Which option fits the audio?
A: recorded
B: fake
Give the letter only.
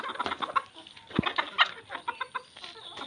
A